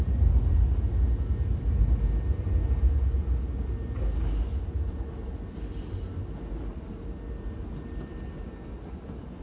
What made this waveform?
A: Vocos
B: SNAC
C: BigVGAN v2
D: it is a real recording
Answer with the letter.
D